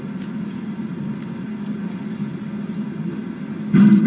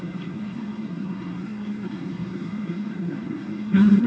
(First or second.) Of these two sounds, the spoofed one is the second